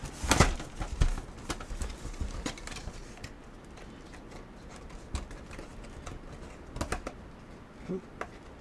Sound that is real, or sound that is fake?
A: real